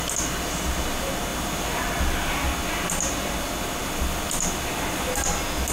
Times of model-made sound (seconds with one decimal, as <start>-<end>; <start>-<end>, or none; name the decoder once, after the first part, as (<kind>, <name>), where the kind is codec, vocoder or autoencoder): 1.3-1.9 (vocoder, BigVGAN v2)

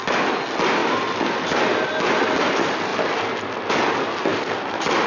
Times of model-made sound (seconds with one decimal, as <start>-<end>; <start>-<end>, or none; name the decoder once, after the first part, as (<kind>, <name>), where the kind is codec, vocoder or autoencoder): 0.8-1.9 (vocoder, BigVGAN v2)

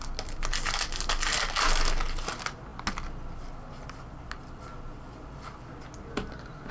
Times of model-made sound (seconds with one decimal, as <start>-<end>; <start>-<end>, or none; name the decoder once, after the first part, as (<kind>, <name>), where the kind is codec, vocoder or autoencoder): none

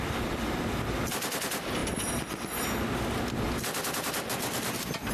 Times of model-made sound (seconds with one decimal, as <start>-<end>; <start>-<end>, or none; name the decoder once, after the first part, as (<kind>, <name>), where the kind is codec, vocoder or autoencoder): none

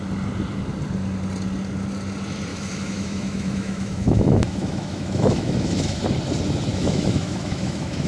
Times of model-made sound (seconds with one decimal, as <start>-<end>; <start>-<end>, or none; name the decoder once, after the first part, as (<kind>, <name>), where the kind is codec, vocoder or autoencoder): 2.5-6.0 (autoencoder, DAC-VAE); 6.7-8.1

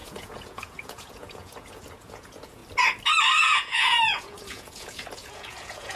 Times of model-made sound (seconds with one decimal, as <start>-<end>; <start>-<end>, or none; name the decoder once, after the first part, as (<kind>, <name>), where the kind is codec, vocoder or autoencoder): 0.0-2.6 (vocoder, Vocos); 3.4-6.0

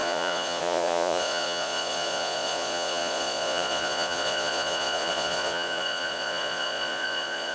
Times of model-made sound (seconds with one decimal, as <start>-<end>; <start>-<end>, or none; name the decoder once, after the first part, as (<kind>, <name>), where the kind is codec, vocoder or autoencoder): 0.0-7.5 (vocoder, Vocos)